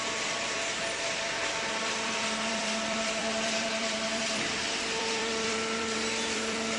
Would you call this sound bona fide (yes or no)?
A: no